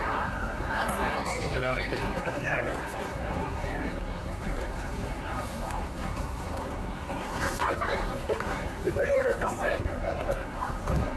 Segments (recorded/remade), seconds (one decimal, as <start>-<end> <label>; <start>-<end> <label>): 0.0-11.2 remade